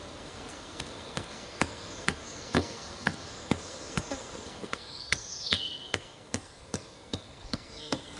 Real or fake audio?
fake